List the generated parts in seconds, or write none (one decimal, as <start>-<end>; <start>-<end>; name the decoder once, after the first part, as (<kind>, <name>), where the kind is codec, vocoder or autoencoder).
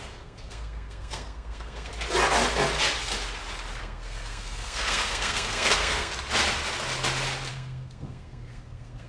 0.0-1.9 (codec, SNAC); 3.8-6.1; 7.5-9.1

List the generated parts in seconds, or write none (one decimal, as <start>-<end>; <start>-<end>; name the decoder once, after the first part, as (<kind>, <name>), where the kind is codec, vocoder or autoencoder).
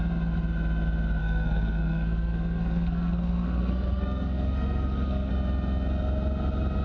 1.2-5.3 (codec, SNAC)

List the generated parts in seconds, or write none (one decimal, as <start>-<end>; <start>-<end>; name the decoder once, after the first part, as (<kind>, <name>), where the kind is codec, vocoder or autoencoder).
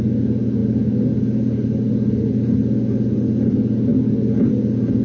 none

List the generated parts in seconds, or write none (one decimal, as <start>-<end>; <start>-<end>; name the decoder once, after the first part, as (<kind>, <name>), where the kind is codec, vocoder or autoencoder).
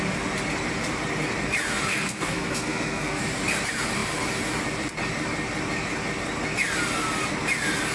1.9-3.2 (codec, SNAC)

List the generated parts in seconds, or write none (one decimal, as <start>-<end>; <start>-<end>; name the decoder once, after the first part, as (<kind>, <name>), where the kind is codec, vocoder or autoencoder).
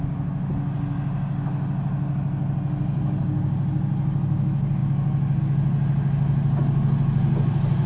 none